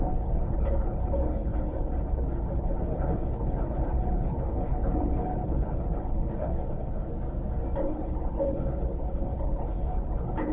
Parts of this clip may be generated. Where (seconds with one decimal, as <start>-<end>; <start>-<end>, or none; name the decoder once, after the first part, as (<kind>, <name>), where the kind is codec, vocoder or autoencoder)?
0.0-7.1 (codec, HILCodec); 7.8-10.5